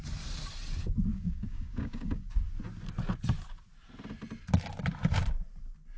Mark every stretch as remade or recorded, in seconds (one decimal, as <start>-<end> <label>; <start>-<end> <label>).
0.0-1.1 recorded; 1.1-2.3 remade; 2.3-6.0 recorded